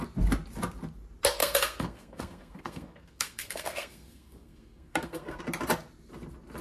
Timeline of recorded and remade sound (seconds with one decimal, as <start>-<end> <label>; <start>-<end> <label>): 0.0-1.4 recorded; 1.4-5.4 remade; 5.4-6.6 recorded